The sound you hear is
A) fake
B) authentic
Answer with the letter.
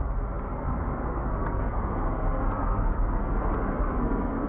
A